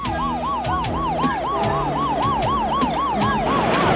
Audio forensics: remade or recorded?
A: recorded